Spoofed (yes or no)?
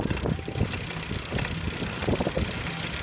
no